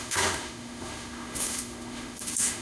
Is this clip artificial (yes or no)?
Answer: yes